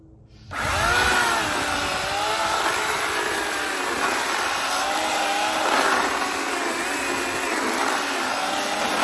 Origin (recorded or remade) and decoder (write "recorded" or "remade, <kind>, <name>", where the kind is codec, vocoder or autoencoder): recorded